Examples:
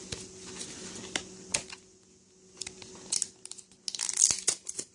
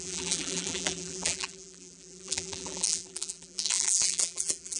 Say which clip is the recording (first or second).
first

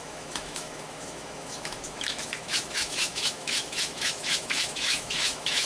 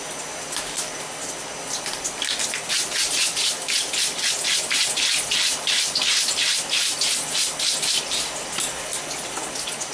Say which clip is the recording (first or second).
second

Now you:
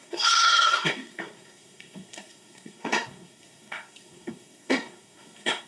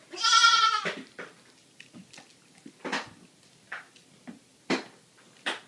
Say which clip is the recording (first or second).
second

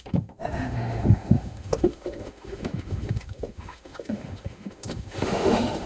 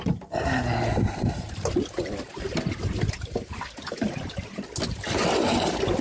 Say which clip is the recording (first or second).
second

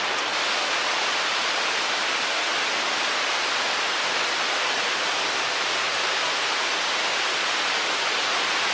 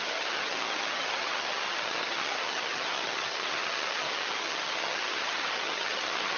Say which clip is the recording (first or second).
first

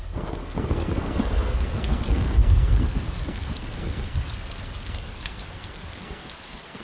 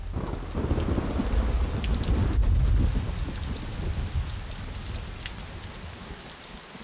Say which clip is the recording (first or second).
second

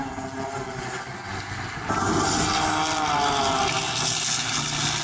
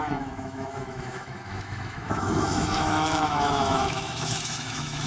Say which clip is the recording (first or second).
first